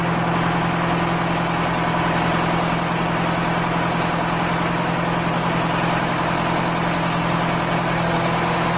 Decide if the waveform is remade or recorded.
recorded